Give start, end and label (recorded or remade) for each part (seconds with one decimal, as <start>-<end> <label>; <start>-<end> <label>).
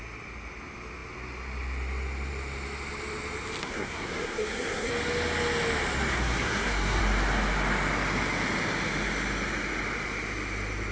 0.0-3.6 recorded; 3.6-4.9 remade; 4.9-6.1 recorded; 6.1-7.0 remade; 7.0-10.9 recorded